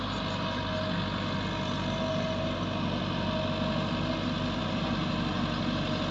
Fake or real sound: real